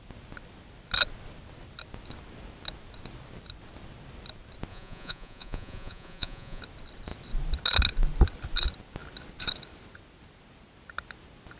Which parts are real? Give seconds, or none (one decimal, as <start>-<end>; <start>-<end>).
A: 0.0-4.7; 6.6-11.6